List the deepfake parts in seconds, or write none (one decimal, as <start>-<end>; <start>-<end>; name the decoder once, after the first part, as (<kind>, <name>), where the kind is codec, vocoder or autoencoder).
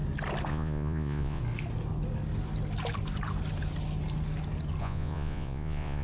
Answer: 0.5-1.4 (vocoder, Vocos); 4.8-6.0